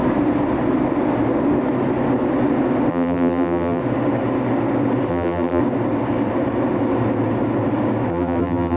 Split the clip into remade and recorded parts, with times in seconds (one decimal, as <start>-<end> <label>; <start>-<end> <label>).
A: 0.0-2.9 recorded; 2.9-3.8 remade; 3.8-5.1 recorded; 5.1-5.6 remade; 5.6-8.1 recorded; 8.1-8.8 remade